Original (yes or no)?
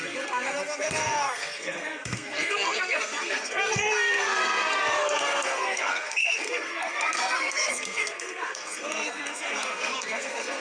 no